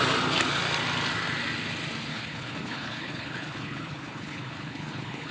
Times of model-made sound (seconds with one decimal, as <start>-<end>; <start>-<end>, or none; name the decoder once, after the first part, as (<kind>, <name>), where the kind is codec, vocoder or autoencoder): 2.1-5.3 (codec, HILCodec)